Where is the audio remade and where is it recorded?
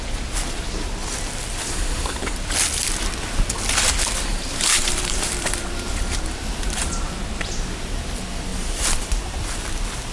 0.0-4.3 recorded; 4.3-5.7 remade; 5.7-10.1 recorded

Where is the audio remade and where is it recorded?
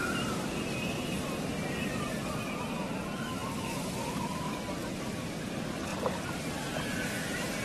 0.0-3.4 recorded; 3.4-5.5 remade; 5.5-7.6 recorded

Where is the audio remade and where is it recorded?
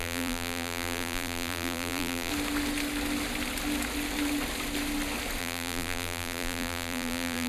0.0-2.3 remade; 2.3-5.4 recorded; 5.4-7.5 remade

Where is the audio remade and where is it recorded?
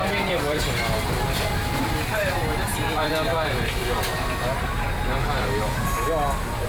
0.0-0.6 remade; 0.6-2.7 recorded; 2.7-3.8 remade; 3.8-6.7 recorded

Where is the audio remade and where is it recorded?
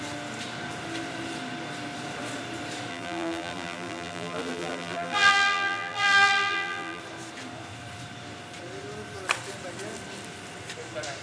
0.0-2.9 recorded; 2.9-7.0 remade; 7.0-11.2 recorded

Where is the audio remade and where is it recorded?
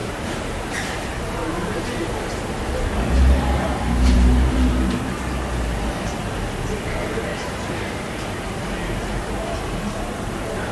0.0-5.0 remade; 5.0-7.3 recorded; 7.3-10.2 remade; 10.2-10.7 recorded